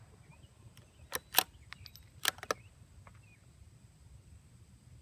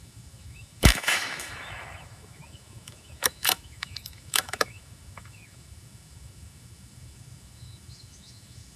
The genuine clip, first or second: first